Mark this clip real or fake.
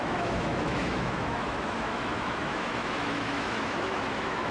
fake